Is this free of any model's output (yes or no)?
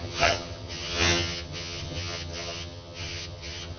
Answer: no